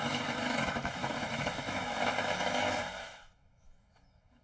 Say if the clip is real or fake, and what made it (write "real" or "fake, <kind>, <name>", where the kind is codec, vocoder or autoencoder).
fake, autoencoder, DAC-VAE